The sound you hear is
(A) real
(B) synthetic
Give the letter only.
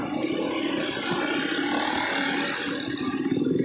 A